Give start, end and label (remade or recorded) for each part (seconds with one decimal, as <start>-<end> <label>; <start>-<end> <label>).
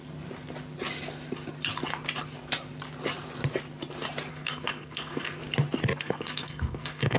0.0-4.3 recorded; 4.3-5.4 remade; 5.4-6.0 recorded; 6.0-7.2 remade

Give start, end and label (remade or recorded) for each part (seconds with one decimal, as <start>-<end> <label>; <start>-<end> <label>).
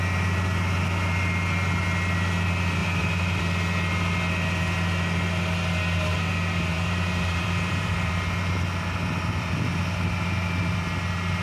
0.0-2.8 recorded; 2.8-3.4 remade; 3.4-6.7 recorded; 6.7-8.1 remade; 8.1-11.4 recorded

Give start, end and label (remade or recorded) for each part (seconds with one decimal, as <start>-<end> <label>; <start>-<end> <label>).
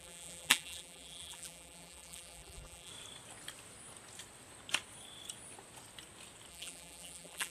0.0-2.9 remade; 2.9-6.5 recorded; 6.5-7.5 remade